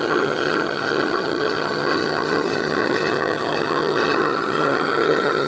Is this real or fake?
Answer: fake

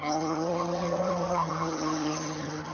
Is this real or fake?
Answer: fake